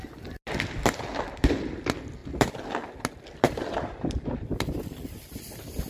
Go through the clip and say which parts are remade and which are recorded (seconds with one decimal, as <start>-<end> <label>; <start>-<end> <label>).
0.0-5.9 recorded